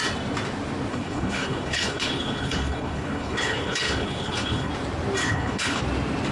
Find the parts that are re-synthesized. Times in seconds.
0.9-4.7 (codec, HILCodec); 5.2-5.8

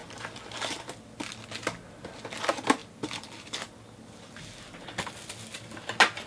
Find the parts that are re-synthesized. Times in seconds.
none